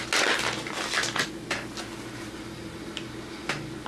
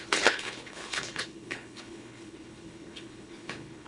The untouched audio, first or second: first